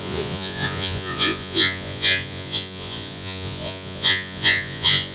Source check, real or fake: fake